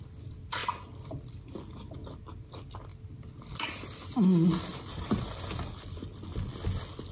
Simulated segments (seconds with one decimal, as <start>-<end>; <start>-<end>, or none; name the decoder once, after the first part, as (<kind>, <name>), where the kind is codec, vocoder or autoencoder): none